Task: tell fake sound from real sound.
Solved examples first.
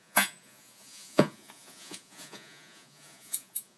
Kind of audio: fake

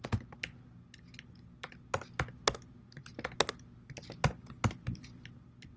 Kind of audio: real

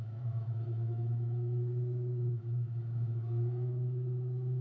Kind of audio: fake